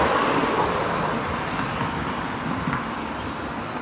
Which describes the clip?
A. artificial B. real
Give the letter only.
A